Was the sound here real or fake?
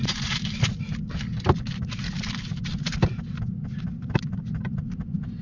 real